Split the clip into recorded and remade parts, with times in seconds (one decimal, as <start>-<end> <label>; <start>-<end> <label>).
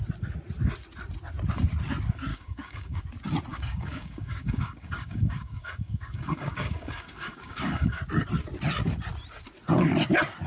0.0-2.3 recorded; 2.3-3.0 remade; 3.0-3.5 recorded; 3.5-8.0 remade; 8.0-10.5 recorded